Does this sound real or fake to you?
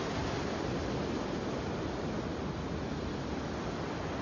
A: real